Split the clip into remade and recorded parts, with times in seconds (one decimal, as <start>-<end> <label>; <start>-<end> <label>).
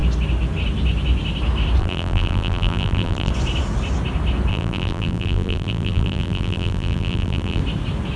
0.0-1.8 recorded; 1.8-3.3 remade; 3.3-4.5 recorded; 4.5-7.6 remade; 7.6-8.2 recorded